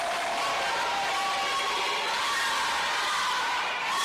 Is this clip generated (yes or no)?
no